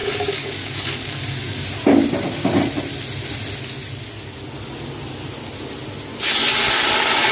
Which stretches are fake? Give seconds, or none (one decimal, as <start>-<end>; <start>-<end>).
0.0-1.6